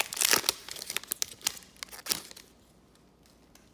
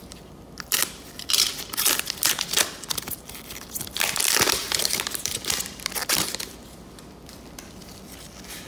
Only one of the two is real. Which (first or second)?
first